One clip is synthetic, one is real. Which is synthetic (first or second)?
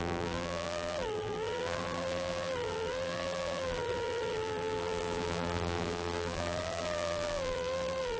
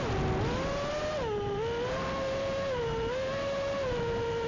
first